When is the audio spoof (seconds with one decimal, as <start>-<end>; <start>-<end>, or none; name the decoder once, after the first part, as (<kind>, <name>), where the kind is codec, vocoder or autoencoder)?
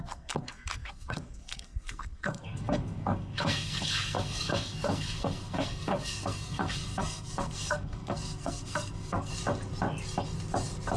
0.0-9.3 (codec, SNAC)